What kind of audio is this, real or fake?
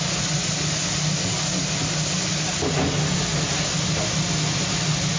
real